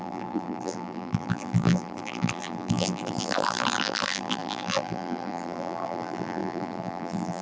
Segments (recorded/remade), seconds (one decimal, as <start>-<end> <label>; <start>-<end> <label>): 0.0-7.4 remade